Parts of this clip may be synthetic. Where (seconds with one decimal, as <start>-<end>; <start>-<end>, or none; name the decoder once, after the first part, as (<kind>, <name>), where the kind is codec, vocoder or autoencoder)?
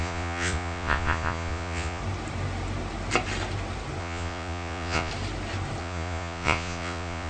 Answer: 0.0-2.0 (vocoder, Vocos); 4.0-5.1; 5.8-7.3